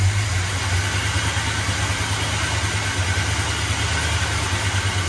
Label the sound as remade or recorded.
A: recorded